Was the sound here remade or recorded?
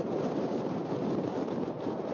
remade